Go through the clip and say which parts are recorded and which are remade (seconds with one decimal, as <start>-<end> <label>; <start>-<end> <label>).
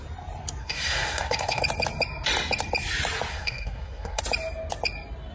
0.0-0.6 recorded; 0.6-1.6 remade; 1.6-3.3 recorded; 3.3-4.2 remade; 4.2-5.3 recorded